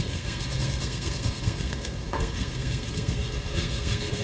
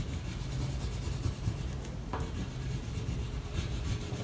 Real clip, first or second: second